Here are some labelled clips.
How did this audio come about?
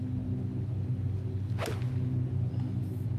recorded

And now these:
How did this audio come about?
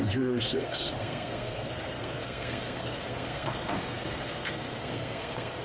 remade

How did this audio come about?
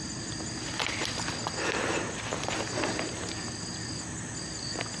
recorded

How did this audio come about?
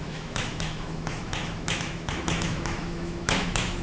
remade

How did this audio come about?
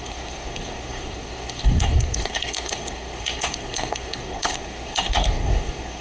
remade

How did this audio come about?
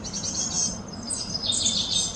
recorded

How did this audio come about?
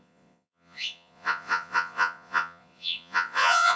remade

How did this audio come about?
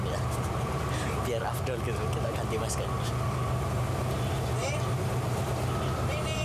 recorded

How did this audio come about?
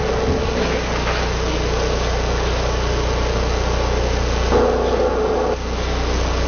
recorded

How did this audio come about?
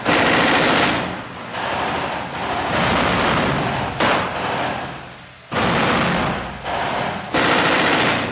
recorded